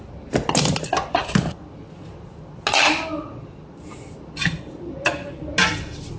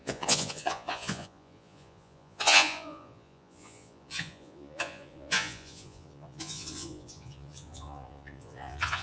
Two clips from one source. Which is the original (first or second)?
first